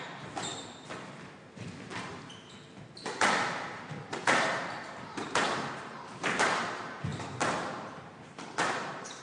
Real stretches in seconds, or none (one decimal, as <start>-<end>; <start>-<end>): 0.5-4.3